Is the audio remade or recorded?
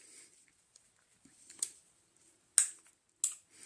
recorded